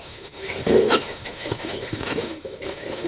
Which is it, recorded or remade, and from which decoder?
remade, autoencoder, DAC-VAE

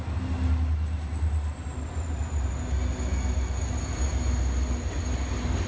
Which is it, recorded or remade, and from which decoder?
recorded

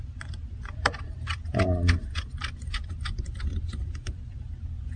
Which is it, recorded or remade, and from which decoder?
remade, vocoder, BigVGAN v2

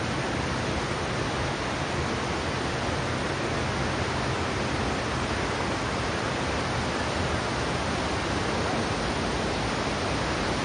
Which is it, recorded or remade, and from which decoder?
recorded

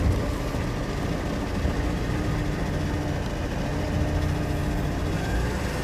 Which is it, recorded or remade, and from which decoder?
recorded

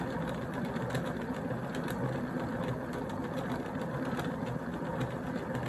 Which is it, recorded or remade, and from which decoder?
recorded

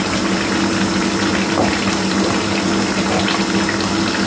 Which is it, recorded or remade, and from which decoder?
recorded